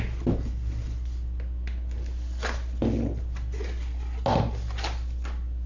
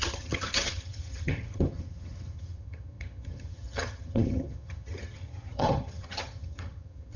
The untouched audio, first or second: first